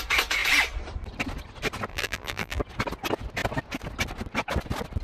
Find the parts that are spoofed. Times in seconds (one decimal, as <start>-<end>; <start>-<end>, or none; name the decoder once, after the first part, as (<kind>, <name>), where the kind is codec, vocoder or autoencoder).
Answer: 1.9-2.6 (vocoder, BigVGAN v2)